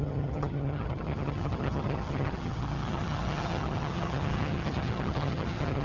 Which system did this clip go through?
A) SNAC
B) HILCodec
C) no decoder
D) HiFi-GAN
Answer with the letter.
D